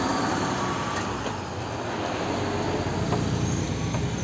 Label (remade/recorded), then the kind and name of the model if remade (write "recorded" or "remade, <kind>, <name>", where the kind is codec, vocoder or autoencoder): recorded